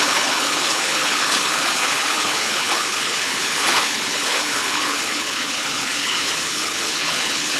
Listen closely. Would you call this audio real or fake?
fake